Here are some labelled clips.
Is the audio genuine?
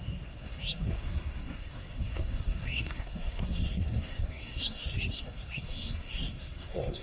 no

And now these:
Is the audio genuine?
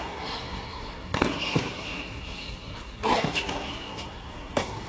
no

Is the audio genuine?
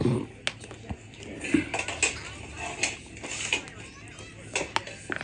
yes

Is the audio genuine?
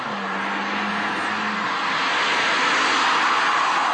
yes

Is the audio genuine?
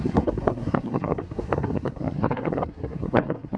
no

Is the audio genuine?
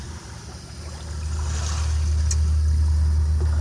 yes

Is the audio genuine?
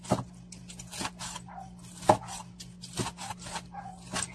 yes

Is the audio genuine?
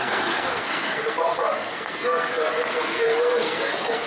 no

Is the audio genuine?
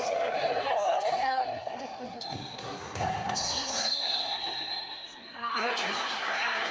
no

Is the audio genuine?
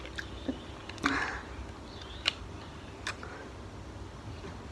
yes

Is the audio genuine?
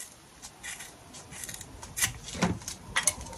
yes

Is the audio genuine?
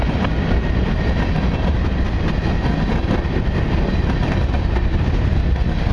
yes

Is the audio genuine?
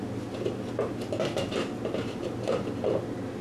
yes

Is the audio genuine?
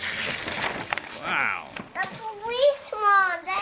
yes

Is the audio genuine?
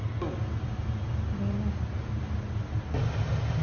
yes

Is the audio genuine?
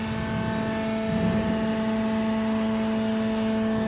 yes